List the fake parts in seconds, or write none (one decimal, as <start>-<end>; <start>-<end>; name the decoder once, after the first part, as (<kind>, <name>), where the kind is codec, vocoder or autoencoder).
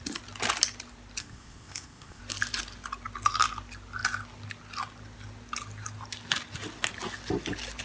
1.2-2.2 (codec, ZipCodec)